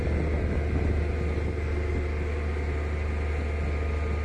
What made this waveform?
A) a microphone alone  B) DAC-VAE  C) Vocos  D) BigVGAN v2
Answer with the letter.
A